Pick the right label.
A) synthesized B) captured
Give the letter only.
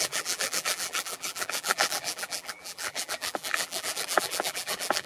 A